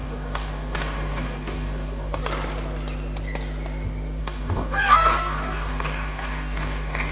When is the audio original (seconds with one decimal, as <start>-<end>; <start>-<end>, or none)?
2.2-4.2